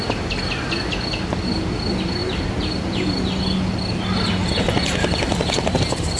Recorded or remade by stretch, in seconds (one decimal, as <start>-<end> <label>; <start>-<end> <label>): 0.0-6.2 recorded